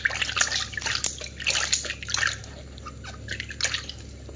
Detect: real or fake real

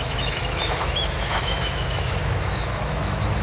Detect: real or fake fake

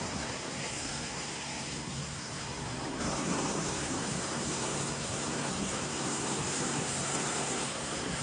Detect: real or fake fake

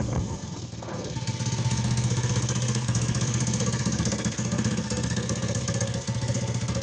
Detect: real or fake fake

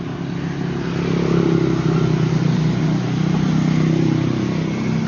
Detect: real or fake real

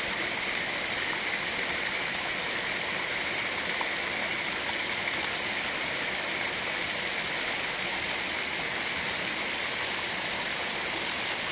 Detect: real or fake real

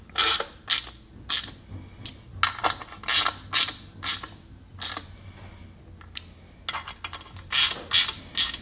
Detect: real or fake real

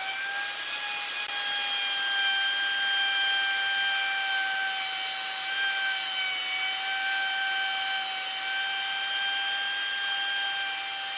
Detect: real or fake real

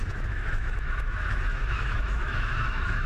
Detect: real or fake fake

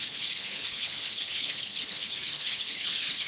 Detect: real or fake fake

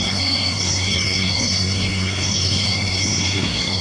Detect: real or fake fake